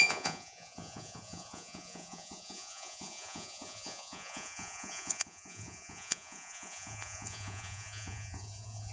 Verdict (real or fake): fake